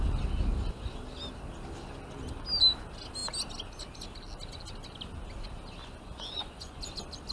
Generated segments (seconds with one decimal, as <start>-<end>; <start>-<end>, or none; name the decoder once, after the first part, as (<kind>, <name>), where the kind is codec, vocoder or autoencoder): 5.8-6.8 (vocoder, Vocos)